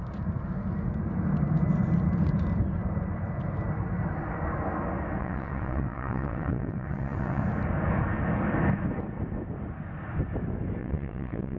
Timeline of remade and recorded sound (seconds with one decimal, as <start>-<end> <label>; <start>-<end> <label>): 0.0-5.2 recorded; 5.2-7.4 remade; 7.4-10.8 recorded; 10.8-11.6 remade